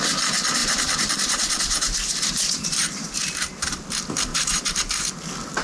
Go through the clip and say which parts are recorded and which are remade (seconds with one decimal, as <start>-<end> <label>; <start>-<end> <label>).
0.0-0.6 recorded; 0.6-3.8 remade; 3.8-4.3 recorded; 4.3-5.1 remade; 5.1-5.6 recorded